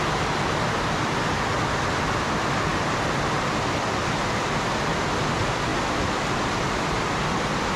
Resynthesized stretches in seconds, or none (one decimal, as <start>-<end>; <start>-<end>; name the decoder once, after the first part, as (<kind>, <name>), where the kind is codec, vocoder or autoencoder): none